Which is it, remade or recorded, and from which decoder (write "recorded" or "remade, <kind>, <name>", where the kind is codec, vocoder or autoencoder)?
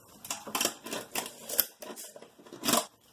recorded